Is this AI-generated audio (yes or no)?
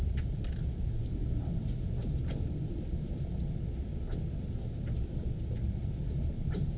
yes